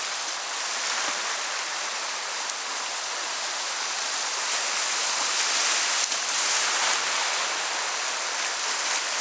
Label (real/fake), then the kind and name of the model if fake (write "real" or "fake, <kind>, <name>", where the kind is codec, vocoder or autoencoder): real